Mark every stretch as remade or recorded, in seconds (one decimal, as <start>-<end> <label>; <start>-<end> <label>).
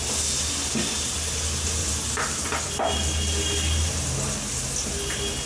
0.0-1.8 recorded; 1.8-2.9 remade; 2.9-5.5 recorded